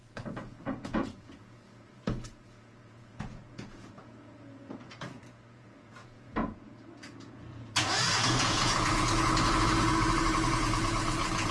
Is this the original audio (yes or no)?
no